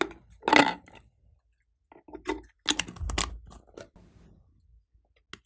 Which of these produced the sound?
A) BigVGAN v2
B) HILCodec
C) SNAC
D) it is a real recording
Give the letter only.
D